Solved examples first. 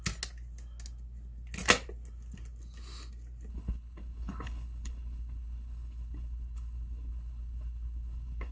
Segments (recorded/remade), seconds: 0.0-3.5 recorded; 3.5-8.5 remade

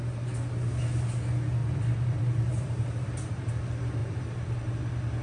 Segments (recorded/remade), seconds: 0.0-1.6 recorded; 1.6-3.5 remade; 3.5-4.0 recorded; 4.0-4.8 remade; 4.8-5.2 recorded

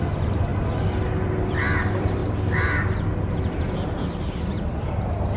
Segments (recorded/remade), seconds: 0.0-5.4 recorded